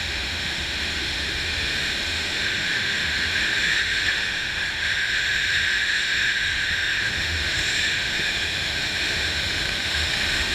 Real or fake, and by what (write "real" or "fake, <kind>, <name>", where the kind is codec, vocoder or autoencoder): fake, autoencoder, DAC-VAE